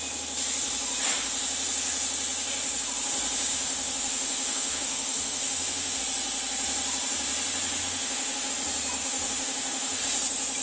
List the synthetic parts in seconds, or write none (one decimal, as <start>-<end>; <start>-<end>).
3.5-6.0; 7.8-8.5; 9.0-10.0